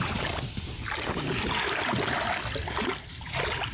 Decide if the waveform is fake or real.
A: real